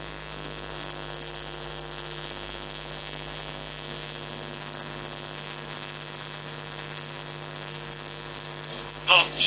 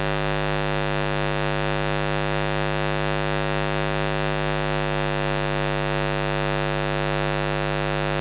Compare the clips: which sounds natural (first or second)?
second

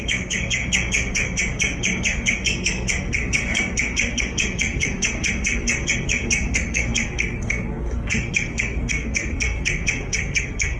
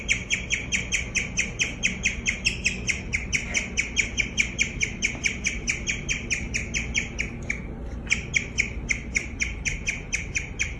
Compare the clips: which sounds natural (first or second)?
second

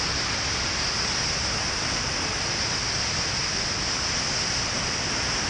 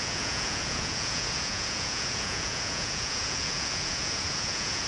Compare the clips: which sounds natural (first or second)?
first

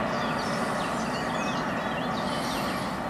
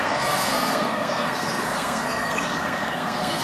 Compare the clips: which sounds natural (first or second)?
first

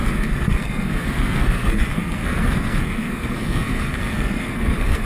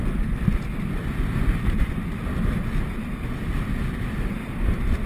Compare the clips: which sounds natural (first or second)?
second